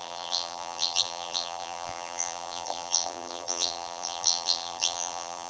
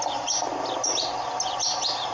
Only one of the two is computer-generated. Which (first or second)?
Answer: first